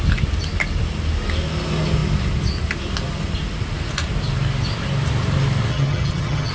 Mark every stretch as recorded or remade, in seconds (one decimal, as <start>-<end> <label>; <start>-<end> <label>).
0.0-5.7 recorded; 5.7-6.5 remade